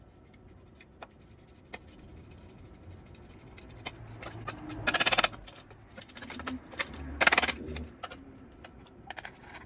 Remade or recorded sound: recorded